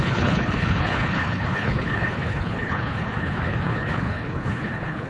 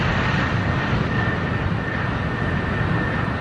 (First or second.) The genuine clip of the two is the second